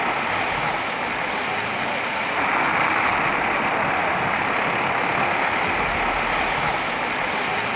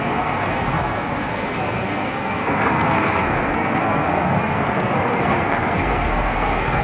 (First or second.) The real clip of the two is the first